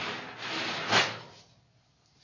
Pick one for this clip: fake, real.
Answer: real